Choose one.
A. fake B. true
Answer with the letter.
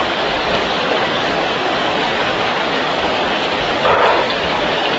A